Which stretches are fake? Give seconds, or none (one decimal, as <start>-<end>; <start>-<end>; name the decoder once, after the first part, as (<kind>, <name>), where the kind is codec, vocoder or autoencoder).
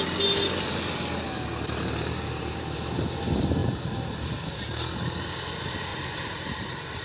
2.4-3.0 (vocoder, BigVGAN v2); 3.6-4.1; 5.9-7.0